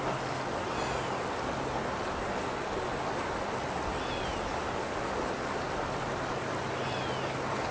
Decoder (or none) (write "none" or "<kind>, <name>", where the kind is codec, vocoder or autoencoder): none